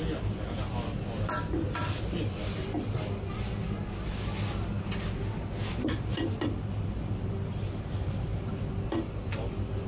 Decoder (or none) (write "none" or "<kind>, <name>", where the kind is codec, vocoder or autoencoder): none